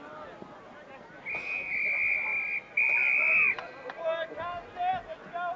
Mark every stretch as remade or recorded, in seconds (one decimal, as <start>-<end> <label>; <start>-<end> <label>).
0.0-5.6 recorded